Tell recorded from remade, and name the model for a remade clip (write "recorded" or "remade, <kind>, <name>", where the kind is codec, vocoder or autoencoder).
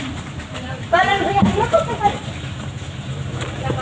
remade, vocoder, BigVGAN v2